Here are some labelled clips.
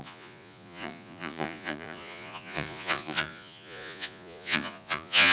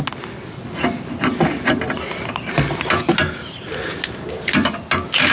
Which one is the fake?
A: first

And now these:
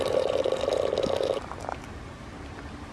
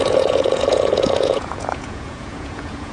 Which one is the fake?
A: second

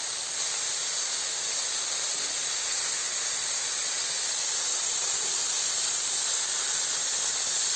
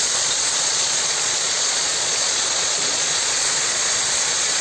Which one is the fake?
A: second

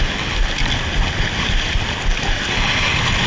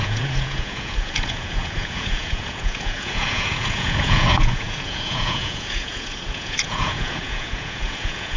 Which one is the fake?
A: second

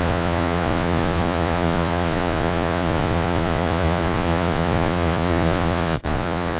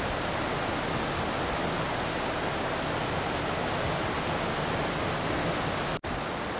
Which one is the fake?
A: first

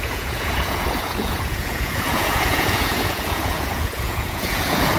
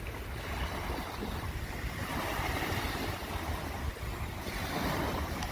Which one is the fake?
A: first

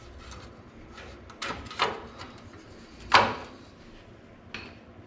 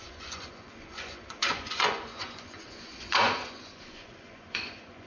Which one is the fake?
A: second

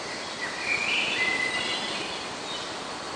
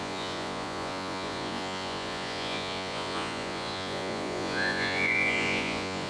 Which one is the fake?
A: second